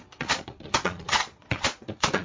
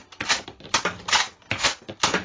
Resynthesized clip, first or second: first